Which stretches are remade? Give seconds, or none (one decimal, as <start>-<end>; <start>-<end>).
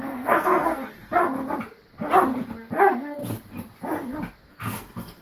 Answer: 0.0-1.2; 2.8-3.2; 4.5-5.2